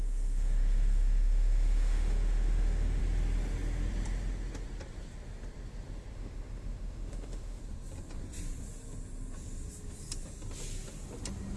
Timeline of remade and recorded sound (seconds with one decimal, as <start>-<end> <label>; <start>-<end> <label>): 0.0-3.0 remade; 3.0-6.1 recorded; 6.1-7.6 remade; 7.6-11.6 recorded